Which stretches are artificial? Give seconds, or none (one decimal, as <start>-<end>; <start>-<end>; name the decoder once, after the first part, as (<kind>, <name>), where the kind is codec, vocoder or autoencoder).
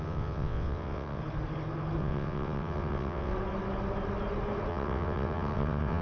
0.0-1.2 (vocoder, WaveNeXt); 2.0-3.3; 4.7-6.0